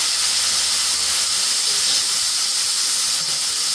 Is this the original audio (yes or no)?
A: yes